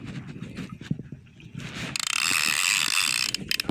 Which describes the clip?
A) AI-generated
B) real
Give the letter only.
B